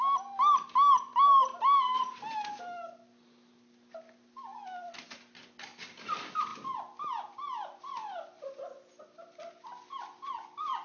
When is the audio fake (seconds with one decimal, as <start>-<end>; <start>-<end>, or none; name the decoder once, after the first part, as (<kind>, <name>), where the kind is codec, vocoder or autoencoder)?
none